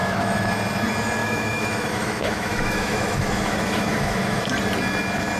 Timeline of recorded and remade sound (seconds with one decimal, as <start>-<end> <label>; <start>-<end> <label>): 0.0-0.5 remade; 0.5-1.2 recorded; 1.2-4.4 remade; 4.4-5.4 recorded

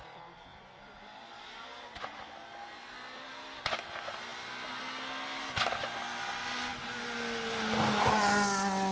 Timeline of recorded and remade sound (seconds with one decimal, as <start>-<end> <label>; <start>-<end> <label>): 0.0-0.5 recorded; 0.5-1.6 remade; 1.6-8.9 recorded

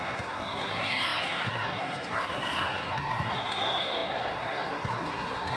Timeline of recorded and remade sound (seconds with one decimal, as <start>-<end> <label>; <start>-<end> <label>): 0.0-5.6 remade

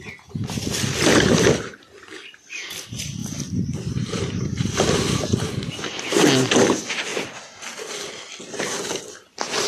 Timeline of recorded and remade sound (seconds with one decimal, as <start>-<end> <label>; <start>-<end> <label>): 0.0-9.7 recorded

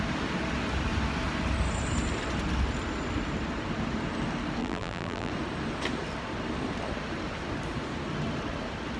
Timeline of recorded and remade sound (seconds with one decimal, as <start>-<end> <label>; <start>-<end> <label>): 0.0-4.6 recorded; 4.6-5.3 remade; 5.3-9.0 recorded

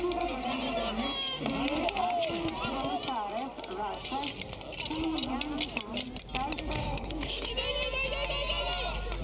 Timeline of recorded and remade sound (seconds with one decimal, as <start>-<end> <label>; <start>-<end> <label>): 0.0-6.8 recorded; 6.8-7.5 remade; 7.5-9.2 recorded